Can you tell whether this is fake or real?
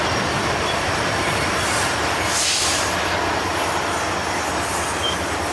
real